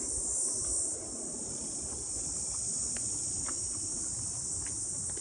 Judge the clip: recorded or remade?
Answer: recorded